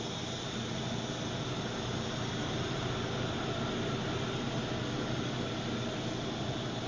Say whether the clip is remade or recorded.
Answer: recorded